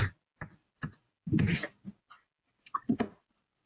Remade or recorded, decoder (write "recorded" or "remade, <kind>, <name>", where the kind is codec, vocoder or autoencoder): recorded